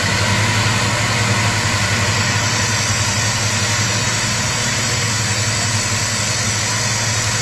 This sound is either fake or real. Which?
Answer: real